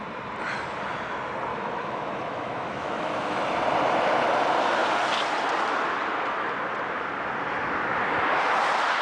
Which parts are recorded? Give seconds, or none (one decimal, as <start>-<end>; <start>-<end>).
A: 0.0-1.5; 3.4-9.0